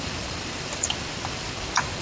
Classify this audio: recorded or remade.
remade